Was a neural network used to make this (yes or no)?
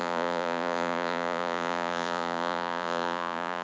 yes